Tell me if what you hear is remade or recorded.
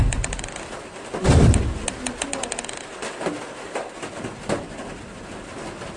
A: recorded